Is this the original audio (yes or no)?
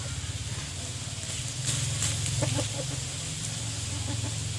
yes